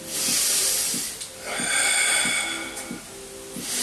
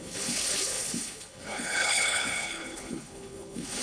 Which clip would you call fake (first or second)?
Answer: second